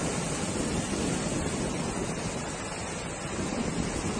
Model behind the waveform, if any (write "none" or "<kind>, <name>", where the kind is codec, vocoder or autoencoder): none